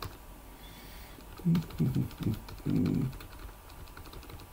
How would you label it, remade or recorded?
remade